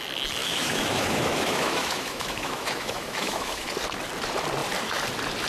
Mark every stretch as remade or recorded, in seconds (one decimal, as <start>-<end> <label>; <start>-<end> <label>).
0.0-0.4 recorded; 0.4-3.7 remade; 3.7-5.5 recorded